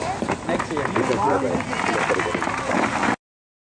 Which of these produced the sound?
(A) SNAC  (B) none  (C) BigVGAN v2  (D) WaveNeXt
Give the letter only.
B